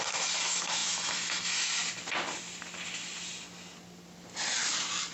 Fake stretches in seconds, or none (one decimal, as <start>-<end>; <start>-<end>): 0.0-1.8